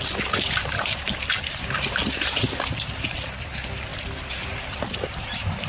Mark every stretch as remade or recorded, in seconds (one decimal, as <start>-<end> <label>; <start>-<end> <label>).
0.0-5.7 recorded